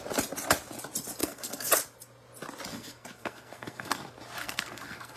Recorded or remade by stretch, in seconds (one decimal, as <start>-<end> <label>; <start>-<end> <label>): 0.0-1.2 recorded; 1.2-1.7 remade; 1.7-2.7 recorded; 2.7-4.0 remade; 4.0-4.4 recorded; 4.4-5.2 remade

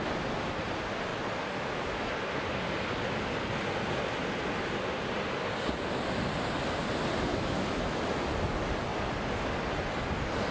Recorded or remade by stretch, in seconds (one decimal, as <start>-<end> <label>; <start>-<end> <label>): 0.0-7.3 recorded; 7.3-8.0 remade; 8.0-10.5 recorded

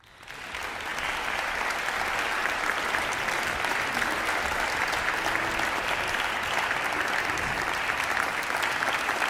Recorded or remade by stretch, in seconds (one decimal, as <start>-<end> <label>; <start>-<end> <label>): 0.0-9.3 recorded

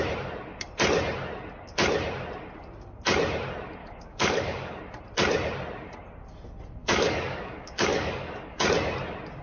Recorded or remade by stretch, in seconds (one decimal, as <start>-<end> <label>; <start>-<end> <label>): 0.0-3.8 recorded; 3.8-4.8 remade; 4.8-6.8 recorded; 6.8-8.7 remade; 8.7-9.4 recorded

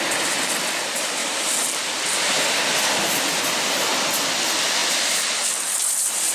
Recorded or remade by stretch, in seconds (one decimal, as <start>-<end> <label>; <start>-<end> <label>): 0.0-6.3 recorded

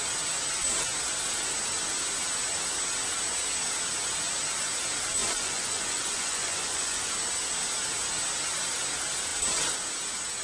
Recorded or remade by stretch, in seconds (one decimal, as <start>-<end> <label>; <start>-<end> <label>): 0.0-5.2 recorded; 5.2-7.1 remade; 7.1-10.4 recorded

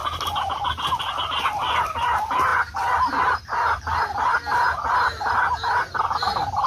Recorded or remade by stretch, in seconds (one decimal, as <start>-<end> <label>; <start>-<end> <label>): 0.0-6.7 recorded